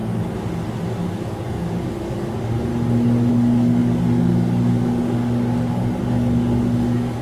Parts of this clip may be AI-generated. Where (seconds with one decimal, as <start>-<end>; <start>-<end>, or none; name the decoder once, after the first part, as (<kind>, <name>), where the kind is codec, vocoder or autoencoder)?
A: 1.1-2.7 (codec, DAC); 3.3-7.2